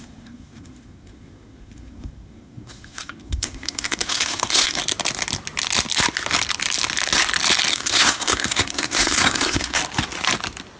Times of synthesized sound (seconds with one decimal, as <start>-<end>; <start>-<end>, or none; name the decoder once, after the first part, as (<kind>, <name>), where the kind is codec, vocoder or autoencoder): 0.0-4.8 (codec, SNAC); 7.7-9.8